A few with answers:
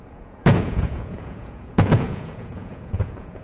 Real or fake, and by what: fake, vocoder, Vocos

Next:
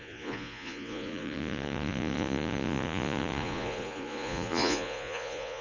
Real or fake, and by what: fake, vocoder, Vocos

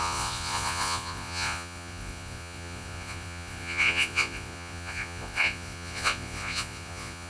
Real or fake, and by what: fake, vocoder, Vocos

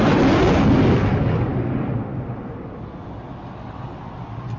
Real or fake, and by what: real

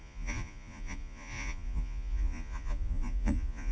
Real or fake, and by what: fake, vocoder, Vocos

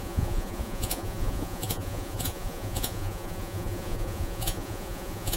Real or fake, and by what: fake, vocoder, Vocos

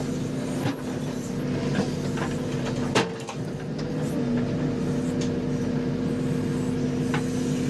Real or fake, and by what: real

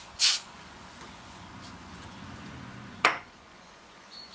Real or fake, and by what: fake, vocoder, Vocos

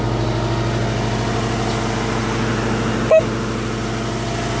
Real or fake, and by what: real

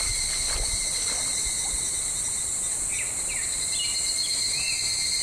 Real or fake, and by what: real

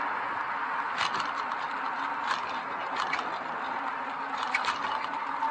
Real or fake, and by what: real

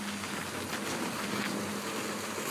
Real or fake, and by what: real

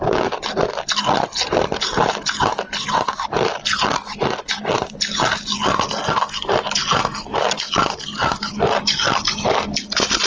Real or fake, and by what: real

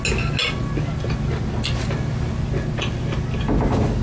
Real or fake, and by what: real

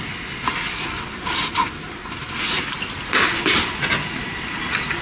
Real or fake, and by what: real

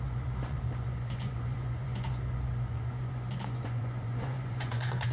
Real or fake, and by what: fake, vocoder, Vocos